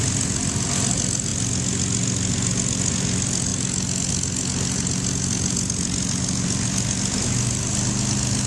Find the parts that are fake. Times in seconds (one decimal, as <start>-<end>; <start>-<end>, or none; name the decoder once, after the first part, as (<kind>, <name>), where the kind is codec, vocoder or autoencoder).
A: none